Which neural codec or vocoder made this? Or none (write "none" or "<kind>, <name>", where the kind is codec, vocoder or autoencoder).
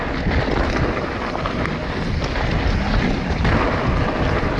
none